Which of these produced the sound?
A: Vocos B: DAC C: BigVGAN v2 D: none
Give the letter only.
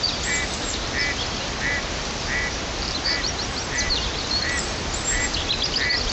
D